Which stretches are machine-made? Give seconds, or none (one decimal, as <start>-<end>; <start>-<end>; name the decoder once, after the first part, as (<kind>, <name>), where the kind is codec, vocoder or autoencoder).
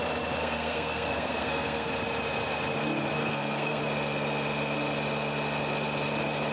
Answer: 0.4-1.9 (codec, SNAC); 3.2-3.8